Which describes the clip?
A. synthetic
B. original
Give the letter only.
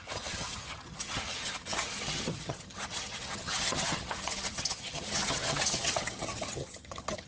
A